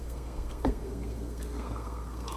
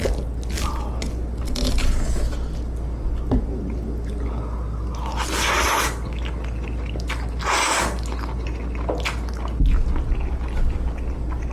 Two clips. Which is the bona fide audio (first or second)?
second